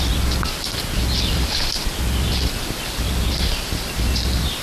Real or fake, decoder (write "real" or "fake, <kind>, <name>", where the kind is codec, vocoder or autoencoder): real